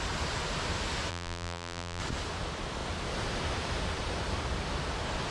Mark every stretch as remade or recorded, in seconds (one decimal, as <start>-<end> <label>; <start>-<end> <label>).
0.0-1.1 recorded; 1.1-2.0 remade; 2.0-5.3 recorded